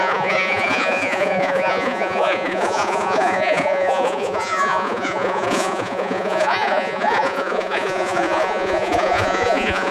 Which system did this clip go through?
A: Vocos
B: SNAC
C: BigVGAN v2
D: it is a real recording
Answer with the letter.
A